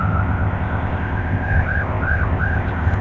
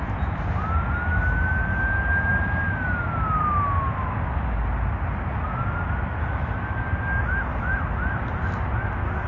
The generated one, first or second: first